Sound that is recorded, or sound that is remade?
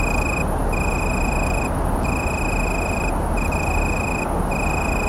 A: recorded